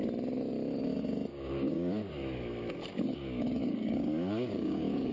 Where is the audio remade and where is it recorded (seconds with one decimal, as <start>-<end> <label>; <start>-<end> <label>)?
0.0-1.3 recorded; 1.3-2.1 remade; 2.1-2.9 recorded; 2.9-5.1 remade